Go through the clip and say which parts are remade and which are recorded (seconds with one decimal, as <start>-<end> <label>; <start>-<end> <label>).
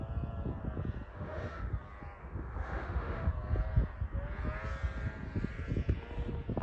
0.0-1.1 recorded; 1.1-1.7 remade; 1.7-2.2 recorded; 2.2-3.3 remade; 3.3-6.6 recorded